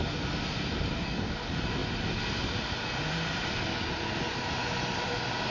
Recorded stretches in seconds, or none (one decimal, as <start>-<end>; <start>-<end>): 0.0-5.5